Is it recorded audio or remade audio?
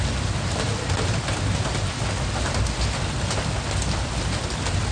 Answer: recorded